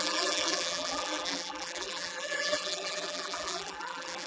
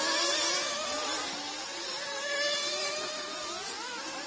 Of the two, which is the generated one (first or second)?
first